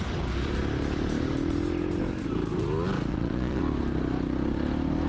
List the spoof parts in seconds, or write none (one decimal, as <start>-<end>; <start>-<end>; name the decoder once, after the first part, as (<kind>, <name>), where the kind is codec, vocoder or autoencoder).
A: 3.1-3.6 (vocoder, Vocos)